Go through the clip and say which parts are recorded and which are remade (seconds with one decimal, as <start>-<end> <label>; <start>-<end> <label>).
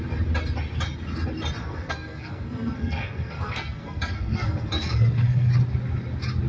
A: 0.0-1.6 recorded; 1.6-5.5 remade; 5.5-6.5 recorded